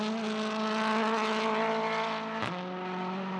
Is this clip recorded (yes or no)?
yes